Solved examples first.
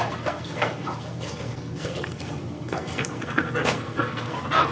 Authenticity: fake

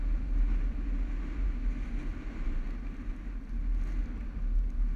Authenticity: real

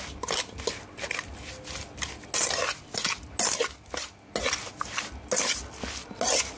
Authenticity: real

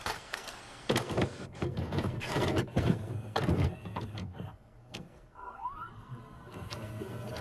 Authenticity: fake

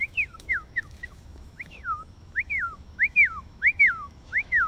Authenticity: fake